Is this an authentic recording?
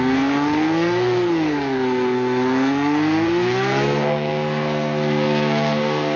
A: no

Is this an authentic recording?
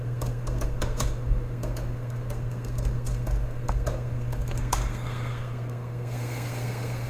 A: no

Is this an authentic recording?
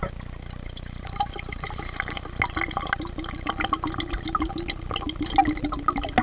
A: yes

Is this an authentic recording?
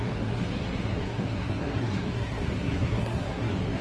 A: no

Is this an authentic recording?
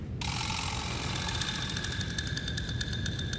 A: yes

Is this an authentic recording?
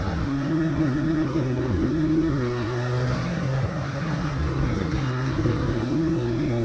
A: no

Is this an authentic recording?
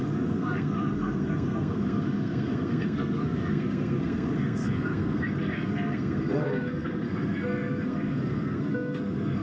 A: no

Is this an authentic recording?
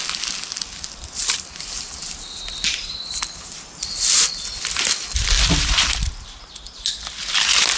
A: yes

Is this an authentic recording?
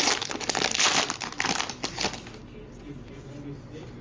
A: yes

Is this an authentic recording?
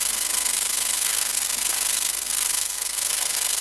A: no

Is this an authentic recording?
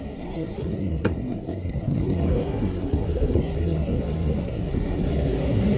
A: no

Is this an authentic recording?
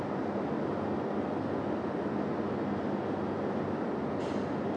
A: yes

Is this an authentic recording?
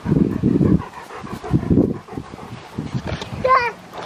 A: yes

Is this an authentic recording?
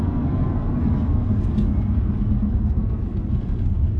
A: no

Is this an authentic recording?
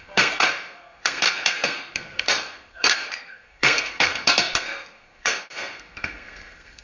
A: no